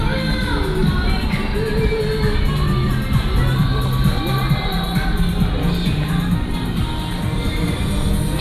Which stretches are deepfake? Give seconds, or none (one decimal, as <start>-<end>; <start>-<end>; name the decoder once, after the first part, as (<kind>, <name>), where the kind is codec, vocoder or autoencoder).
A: none